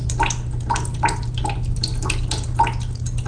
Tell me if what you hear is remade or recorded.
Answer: recorded